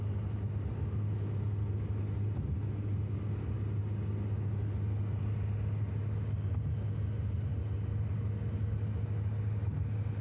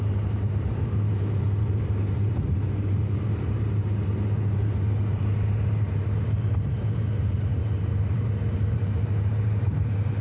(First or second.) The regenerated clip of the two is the second